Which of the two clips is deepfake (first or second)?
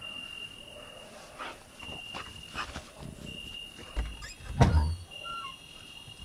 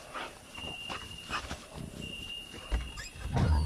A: second